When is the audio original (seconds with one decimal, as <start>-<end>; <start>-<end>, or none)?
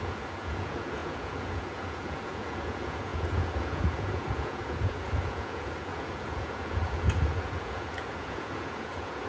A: none